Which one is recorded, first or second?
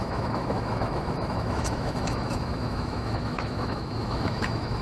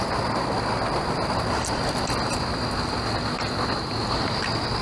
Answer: second